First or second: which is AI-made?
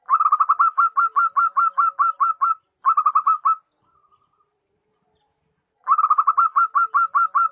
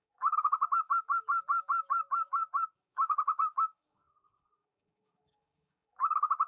second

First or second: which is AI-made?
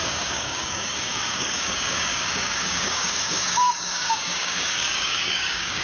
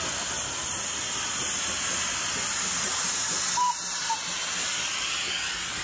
first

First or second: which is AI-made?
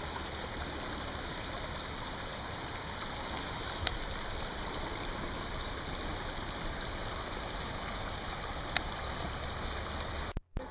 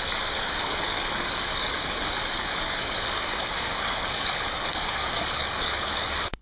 second